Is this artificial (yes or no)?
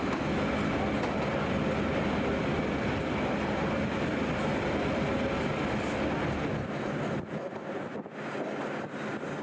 no